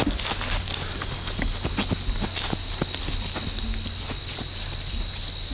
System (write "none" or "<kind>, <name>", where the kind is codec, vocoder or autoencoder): none